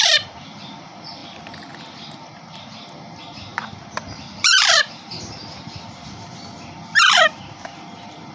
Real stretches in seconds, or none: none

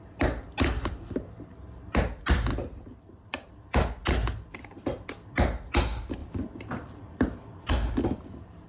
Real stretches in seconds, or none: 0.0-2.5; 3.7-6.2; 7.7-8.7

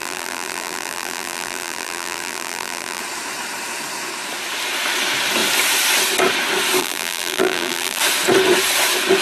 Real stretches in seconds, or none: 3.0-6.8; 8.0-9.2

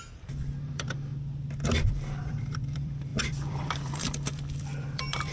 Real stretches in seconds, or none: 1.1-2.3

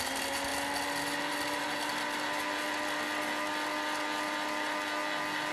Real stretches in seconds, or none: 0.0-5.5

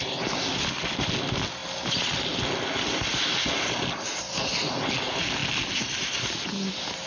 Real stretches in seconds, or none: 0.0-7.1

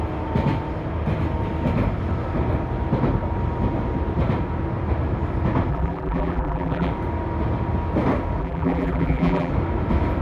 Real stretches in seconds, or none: 0.0-5.7; 6.9-8.4; 9.5-10.2

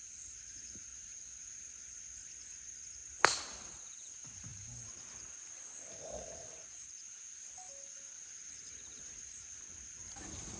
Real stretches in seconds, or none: 0.0-10.0